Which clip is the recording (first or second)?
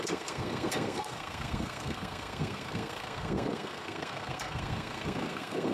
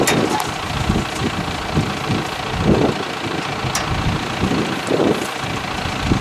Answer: second